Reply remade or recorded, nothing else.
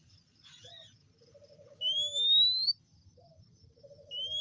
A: recorded